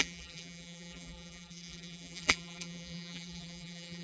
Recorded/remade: remade